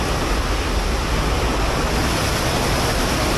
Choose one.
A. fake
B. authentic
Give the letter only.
B